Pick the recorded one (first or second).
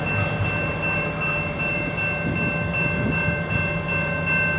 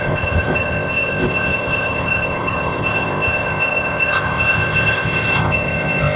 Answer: first